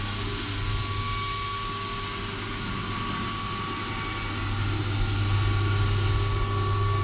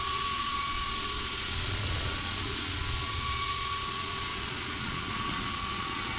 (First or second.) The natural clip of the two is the first